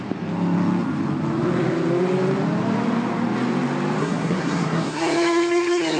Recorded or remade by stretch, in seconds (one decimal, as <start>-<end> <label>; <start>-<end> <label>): 0.0-4.0 recorded; 4.0-6.0 remade